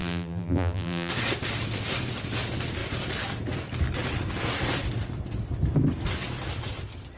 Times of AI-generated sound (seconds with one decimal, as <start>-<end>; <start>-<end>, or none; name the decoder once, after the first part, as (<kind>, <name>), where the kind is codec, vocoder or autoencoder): 0.0-1.1 (vocoder, BigVGAN v2)